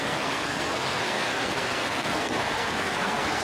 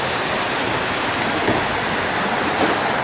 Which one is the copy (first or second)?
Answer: first